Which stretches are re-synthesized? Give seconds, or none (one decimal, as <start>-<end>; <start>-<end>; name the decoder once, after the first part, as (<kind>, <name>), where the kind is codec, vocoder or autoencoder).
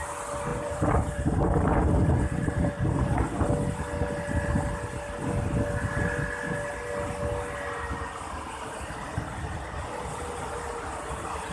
0.5-3.4 (vocoder, BigVGAN v2)